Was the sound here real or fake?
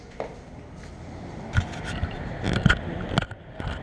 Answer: real